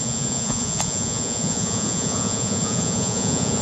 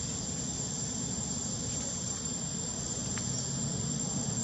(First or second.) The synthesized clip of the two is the first